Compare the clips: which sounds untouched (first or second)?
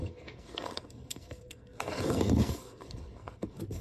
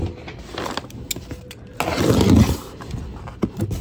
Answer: second